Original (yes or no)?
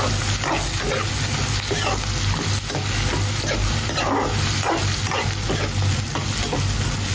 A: yes